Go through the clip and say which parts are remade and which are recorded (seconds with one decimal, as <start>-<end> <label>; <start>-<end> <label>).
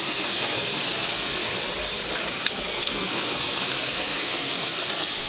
0.0-1.7 remade; 1.7-2.3 recorded; 2.3-5.3 remade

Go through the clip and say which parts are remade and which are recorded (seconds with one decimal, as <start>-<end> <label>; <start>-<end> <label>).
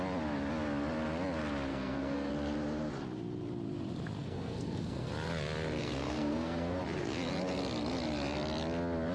0.0-1.7 recorded; 1.7-2.3 remade; 2.3-4.2 recorded; 4.2-5.1 remade; 5.1-5.8 recorded; 5.8-6.8 remade; 6.8-9.1 recorded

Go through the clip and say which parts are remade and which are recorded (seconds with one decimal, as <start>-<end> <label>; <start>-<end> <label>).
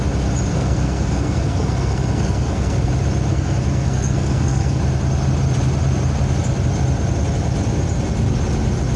0.0-0.5 recorded; 0.5-2.9 remade; 2.9-3.3 recorded; 3.3-4.8 remade; 4.8-9.0 recorded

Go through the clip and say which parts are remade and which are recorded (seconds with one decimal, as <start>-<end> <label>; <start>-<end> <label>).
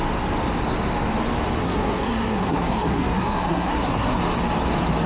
0.0-1.6 recorded; 1.6-4.2 remade; 4.2-5.1 recorded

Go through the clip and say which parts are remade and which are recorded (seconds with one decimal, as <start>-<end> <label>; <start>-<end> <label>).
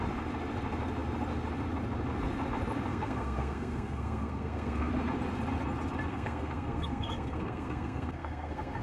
0.0-2.9 recorded; 2.9-4.9 remade; 4.9-6.1 recorded; 6.1-8.8 remade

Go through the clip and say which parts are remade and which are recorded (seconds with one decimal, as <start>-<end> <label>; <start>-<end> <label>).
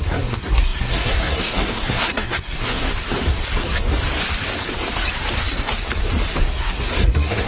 0.0-2.9 remade; 2.9-6.4 recorded; 6.4-7.5 remade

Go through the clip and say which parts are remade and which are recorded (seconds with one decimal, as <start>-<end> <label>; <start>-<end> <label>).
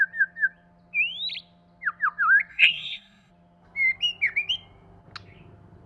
0.0-2.5 recorded; 2.5-3.3 remade; 3.3-5.9 recorded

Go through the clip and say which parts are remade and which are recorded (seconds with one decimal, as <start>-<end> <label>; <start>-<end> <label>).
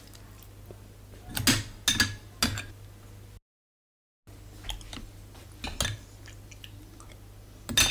0.0-7.9 recorded